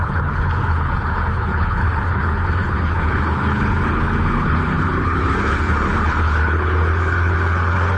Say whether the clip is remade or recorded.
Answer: remade